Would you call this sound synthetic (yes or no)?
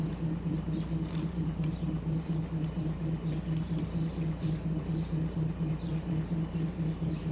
yes